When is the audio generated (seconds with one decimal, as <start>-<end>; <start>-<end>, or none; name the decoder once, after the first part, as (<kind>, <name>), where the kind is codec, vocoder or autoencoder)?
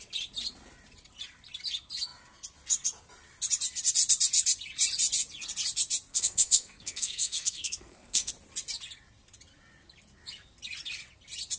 6.1-8.3 (codec, SNAC)